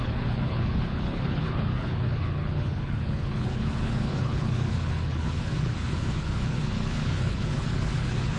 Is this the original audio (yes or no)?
no